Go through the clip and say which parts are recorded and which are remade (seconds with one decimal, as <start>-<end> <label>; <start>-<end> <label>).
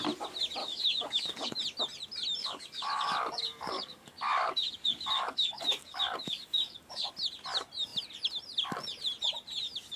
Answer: 0.0-0.6 recorded; 0.6-1.6 remade; 1.6-2.4 recorded; 2.4-7.1 remade; 7.1-10.0 recorded